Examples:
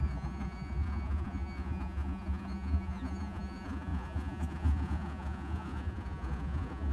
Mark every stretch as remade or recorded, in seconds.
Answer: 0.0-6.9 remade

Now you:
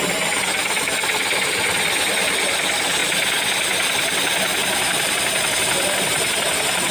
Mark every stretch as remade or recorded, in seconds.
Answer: 0.0-6.9 recorded

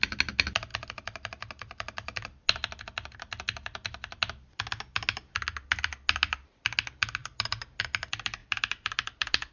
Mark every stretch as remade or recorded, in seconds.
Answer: 0.0-7.2 recorded; 7.2-7.8 remade; 7.8-8.4 recorded; 8.4-9.5 remade

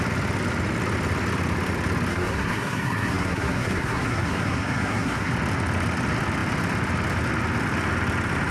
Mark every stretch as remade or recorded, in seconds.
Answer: 0.0-2.1 recorded; 2.1-5.3 remade; 5.3-8.5 recorded

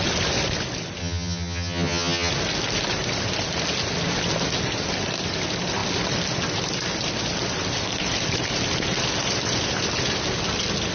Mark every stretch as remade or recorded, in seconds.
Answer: 0.0-1.0 recorded; 1.0-2.3 remade; 2.3-10.9 recorded